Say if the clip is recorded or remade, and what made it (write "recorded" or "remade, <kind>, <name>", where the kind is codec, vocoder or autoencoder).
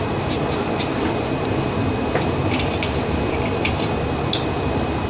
remade, vocoder, BigVGAN v2